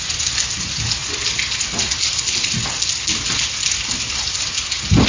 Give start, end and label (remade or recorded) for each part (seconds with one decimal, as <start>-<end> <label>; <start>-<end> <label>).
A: 0.0-5.1 recorded